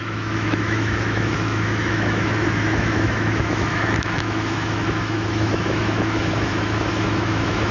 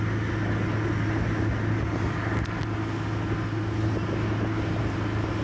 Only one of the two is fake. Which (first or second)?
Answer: first